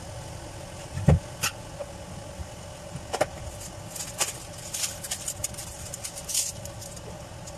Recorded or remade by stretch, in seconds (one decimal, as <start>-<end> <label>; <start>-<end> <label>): 0.0-7.6 recorded